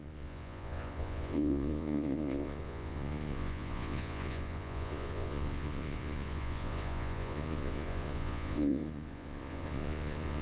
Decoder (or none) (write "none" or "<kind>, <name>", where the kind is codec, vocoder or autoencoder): vocoder, Vocos